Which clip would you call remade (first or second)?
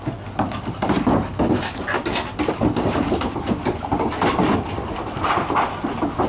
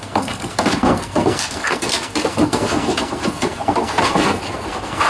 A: second